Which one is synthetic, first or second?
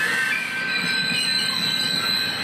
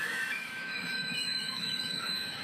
second